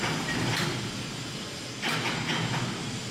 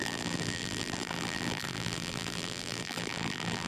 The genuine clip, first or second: first